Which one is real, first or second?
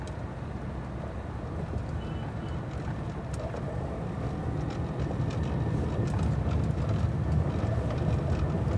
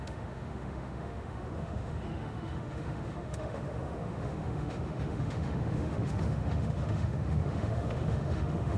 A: first